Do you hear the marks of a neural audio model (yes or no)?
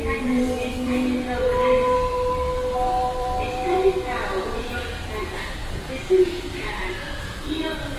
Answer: yes